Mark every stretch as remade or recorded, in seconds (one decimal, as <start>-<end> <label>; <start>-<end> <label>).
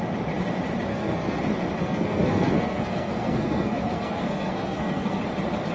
0.0-0.9 recorded; 0.9-1.4 remade; 1.4-1.8 recorded; 1.8-5.2 remade; 5.2-5.7 recorded